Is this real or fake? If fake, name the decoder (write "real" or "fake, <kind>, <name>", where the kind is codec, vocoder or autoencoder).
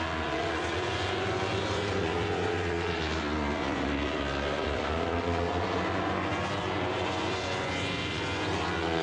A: fake, vocoder, Vocos